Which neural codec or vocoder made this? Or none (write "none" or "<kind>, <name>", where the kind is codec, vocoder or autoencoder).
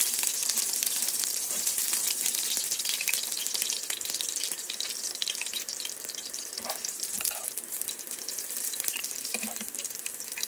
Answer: vocoder, BigVGAN v2